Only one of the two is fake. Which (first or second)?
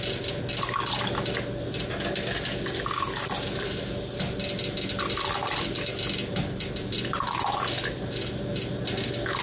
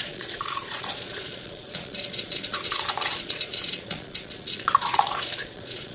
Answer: second